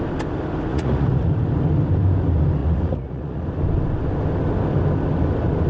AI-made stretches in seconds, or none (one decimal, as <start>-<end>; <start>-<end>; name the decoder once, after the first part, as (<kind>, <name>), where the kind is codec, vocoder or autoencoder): 0.7-1.3 (vocoder, Vocos); 2.6-3.4